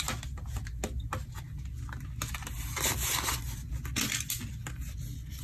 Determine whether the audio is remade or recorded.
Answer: recorded